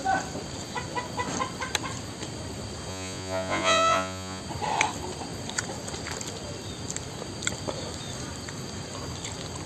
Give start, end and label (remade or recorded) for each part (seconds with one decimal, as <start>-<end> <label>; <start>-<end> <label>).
0.0-2.9 recorded; 2.9-4.4 remade; 4.4-9.7 recorded